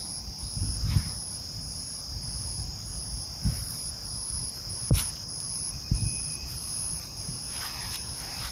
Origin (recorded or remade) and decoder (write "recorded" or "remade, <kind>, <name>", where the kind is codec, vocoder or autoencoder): remade, vocoder, BigVGAN v2